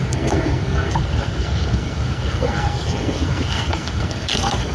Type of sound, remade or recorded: remade